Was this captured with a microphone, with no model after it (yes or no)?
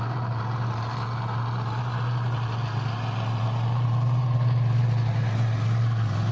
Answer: yes